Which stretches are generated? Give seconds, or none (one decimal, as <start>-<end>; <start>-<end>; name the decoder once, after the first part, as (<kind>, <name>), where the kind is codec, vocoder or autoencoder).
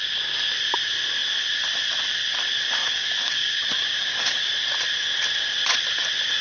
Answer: 2.8-4.5 (codec, DAC)